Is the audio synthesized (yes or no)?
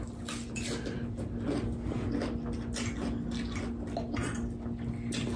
no